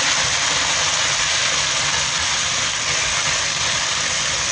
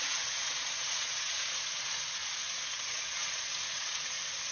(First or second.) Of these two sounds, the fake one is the second